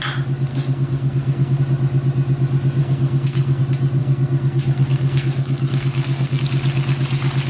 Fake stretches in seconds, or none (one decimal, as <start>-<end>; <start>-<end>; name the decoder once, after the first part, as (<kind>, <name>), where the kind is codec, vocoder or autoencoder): 0.5-1.6 (codec, SNAC); 2.8-3.6; 4.0-6.4